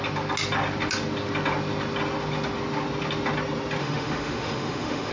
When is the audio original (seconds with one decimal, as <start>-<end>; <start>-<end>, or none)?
0.0-3.8